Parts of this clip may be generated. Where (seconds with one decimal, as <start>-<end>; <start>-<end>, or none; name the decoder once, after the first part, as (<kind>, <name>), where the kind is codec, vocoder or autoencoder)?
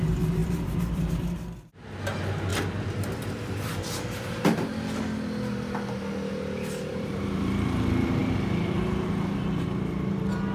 0.4-1.1 (vocoder, BigVGAN v2); 2.5-4.7; 6.9-7.5